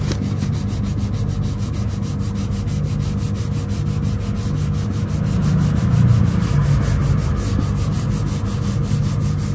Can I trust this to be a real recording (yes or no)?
yes